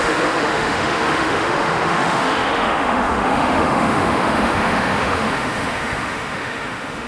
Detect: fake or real fake